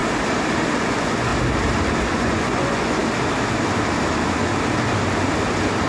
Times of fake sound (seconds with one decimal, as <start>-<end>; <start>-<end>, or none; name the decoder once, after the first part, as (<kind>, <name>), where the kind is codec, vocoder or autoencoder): 0.8-1.3 (vocoder, Vocos); 2.1-3.0